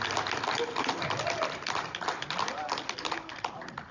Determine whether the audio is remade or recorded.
recorded